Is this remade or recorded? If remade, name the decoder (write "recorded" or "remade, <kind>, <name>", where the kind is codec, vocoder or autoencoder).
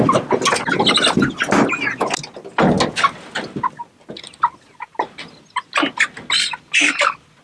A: recorded